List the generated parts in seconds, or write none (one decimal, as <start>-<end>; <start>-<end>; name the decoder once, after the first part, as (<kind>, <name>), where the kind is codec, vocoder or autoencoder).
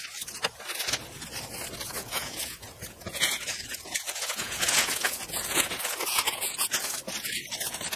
2.0-6.8 (vocoder, Vocos)